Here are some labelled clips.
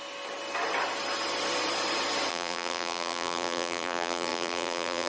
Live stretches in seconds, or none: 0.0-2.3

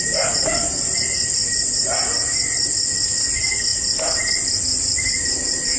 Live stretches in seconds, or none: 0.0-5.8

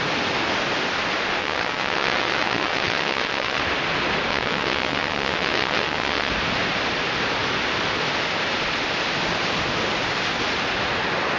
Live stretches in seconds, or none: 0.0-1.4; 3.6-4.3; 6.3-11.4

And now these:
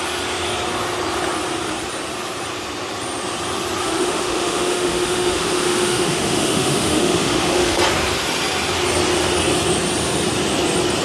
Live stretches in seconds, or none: 0.0-3.8; 7.8-11.0

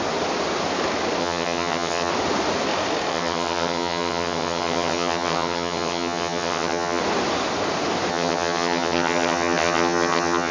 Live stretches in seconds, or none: 0.0-1.2; 2.1-3.1; 7.0-8.1

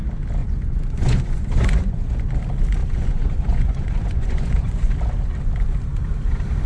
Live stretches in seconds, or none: 0.0-0.4; 2.1-2.8; 4.9-6.7

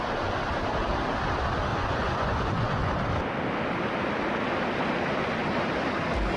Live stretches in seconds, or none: 0.0-1.7; 2.9-6.4

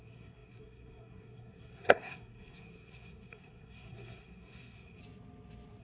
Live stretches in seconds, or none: 5.0-5.8